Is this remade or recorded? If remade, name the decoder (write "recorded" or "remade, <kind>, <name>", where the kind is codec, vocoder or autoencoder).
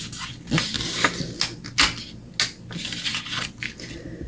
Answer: recorded